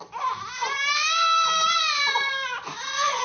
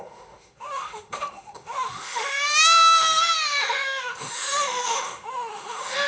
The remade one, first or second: second